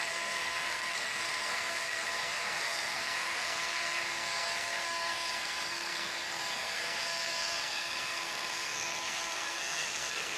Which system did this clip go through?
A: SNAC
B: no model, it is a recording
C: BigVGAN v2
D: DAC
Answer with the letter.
A